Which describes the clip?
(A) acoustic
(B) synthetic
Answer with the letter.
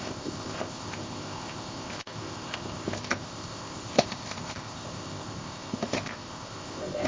B